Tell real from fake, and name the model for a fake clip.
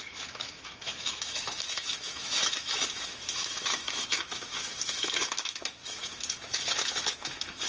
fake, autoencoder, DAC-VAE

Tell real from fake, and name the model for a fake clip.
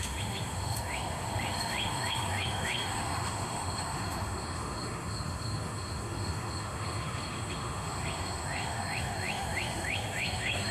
fake, autoencoder, DAC-VAE